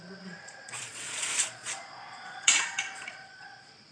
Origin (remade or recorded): remade